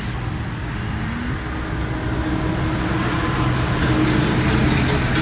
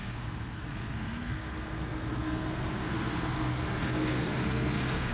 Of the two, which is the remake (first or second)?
second